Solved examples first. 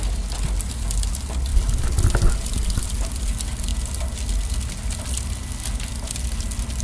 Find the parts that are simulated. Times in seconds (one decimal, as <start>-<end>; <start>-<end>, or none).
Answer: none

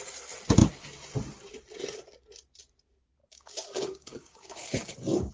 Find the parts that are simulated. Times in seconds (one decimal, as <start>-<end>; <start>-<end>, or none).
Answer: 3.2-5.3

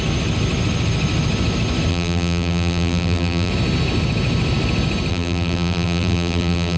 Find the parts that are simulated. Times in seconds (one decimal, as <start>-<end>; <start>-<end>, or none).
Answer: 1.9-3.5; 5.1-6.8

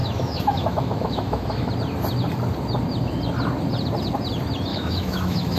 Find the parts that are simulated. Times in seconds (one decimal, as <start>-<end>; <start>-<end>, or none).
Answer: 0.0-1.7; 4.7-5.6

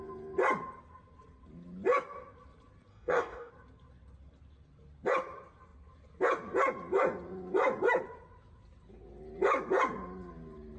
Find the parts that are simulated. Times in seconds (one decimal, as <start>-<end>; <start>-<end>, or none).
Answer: 2.9-3.5

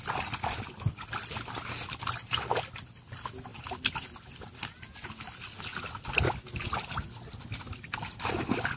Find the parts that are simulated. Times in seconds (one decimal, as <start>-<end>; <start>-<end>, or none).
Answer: none

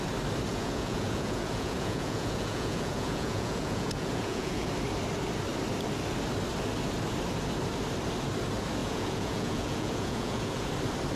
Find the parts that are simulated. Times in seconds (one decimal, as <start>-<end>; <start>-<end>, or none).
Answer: 0.5-4.7; 8.8-10.7